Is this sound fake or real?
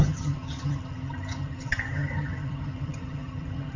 fake